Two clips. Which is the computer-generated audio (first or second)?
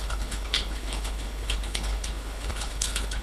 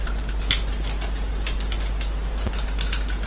first